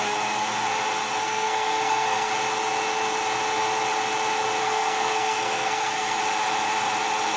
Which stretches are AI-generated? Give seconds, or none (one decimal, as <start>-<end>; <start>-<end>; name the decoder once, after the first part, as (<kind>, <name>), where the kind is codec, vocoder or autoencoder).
1.2-2.3 (codec, SNAC); 4.6-6.2